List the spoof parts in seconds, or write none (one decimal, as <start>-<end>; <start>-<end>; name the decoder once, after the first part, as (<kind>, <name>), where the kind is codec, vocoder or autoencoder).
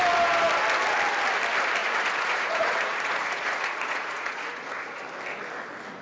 1.8-5.0 (vocoder, Vocos)